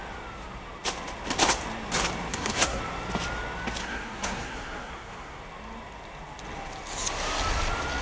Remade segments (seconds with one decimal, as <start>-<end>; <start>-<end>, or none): 2.3-2.8; 3.8-5.4

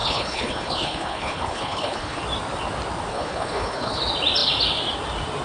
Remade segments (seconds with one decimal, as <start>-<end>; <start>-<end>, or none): 0.0-2.2; 3.1-4.0

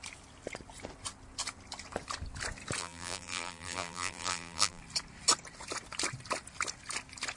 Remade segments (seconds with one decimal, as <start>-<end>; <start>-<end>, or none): 2.8-4.8

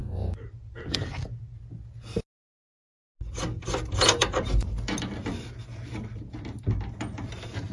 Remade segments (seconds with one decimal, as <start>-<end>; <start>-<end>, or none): 0.0-1.1

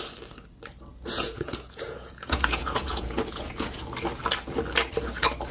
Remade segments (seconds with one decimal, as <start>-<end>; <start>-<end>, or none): 0.9-3.8

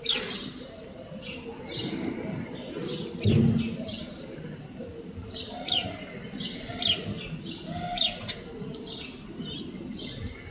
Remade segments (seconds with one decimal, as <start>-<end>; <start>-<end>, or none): none